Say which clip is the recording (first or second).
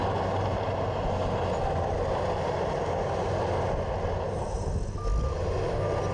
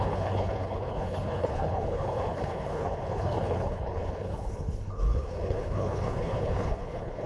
first